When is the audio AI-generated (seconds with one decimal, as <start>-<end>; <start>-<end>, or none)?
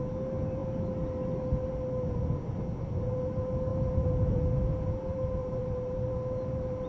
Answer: 3.7-4.9; 5.4-6.1